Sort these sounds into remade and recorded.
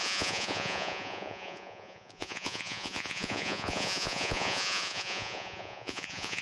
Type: remade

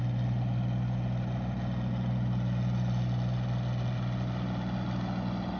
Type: recorded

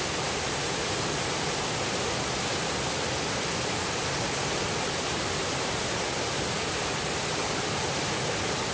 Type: recorded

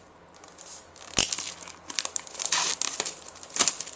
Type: recorded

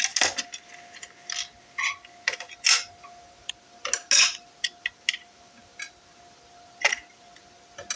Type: recorded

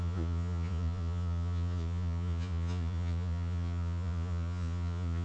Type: remade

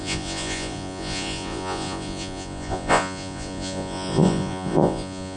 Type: remade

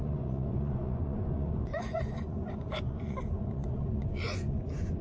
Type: remade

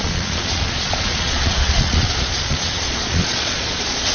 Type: remade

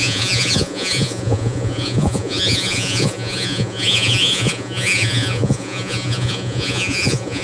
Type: remade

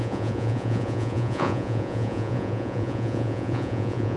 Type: remade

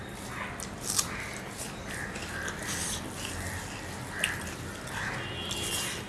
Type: recorded